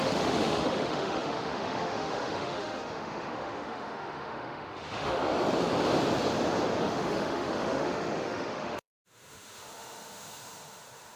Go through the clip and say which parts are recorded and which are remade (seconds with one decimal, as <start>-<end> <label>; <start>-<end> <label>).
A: 0.0-5.2 remade; 5.2-6.8 recorded; 6.8-11.2 remade